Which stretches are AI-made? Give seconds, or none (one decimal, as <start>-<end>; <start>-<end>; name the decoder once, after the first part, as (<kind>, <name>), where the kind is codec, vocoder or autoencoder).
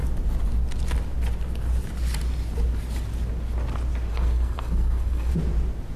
4.1-5.3 (codec, SNAC)